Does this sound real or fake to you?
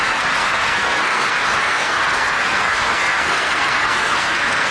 fake